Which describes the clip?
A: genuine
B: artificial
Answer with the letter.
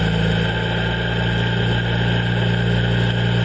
A